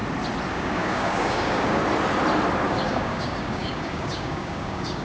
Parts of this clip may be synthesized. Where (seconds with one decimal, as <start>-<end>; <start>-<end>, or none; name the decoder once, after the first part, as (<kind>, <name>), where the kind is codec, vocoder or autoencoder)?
0.5-1.8 (codec, DAC); 2.7-5.0

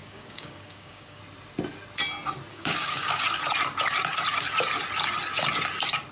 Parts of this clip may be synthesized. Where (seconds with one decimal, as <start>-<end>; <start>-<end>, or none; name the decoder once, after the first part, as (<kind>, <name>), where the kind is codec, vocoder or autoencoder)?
0.0-1.2 (codec, DAC); 2.5-3.2

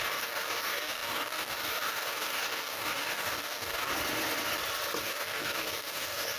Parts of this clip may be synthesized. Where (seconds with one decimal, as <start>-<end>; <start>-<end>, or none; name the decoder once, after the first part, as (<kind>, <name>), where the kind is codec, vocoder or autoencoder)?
0.0-3.9 (codec, DAC); 5.0-6.4